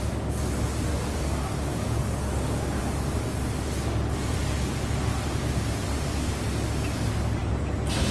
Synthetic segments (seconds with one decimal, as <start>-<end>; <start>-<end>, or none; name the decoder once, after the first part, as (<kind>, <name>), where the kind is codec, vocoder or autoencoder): 0.9-2.8 (codec, DAC)